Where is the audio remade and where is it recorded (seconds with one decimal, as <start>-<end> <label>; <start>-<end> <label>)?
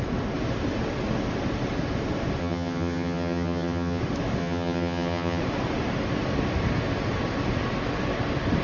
0.0-2.4 recorded; 2.4-4.0 remade; 4.0-4.4 recorded; 4.4-5.4 remade; 5.4-8.6 recorded